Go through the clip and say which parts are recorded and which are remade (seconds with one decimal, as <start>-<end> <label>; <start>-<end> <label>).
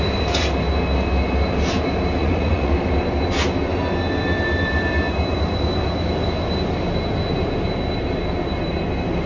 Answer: 0.0-2.2 recorded; 2.2-2.7 remade; 2.7-9.3 recorded